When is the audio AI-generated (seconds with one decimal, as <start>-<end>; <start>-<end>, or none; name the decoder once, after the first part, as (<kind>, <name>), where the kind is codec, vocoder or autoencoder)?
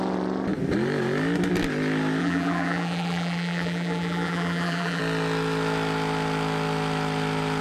2.2-5.0 (vocoder, BigVGAN v2)